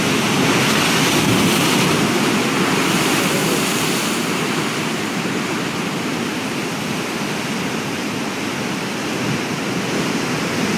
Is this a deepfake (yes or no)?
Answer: no